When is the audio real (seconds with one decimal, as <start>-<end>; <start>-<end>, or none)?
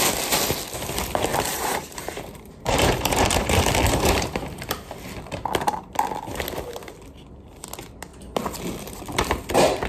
0.0-1.3; 3.6-9.9